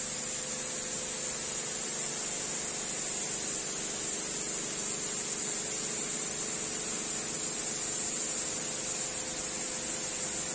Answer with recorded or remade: recorded